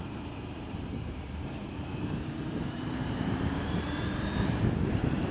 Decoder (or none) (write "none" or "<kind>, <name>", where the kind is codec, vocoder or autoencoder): vocoder, BigVGAN v2